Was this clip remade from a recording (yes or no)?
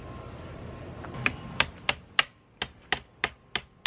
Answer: no